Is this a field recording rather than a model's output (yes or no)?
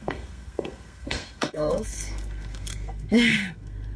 no